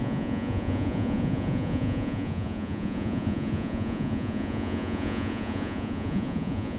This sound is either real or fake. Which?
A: fake